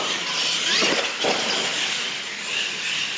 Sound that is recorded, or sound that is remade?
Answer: recorded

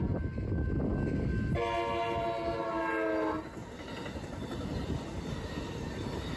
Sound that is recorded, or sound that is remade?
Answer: recorded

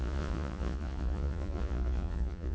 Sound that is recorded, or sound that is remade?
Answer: remade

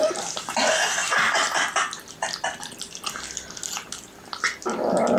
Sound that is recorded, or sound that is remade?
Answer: recorded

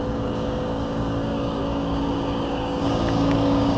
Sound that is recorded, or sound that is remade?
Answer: remade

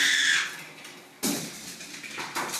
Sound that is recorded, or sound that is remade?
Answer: recorded